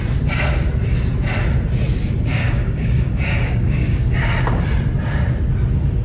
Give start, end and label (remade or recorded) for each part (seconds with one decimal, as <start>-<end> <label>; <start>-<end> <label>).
0.0-2.3 recorded; 2.3-4.3 remade; 4.3-6.0 recorded